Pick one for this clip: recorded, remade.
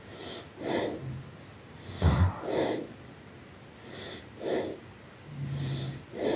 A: recorded